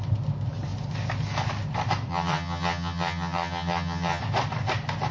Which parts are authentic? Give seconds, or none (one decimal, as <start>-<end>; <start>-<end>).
0.0-2.1; 4.2-5.1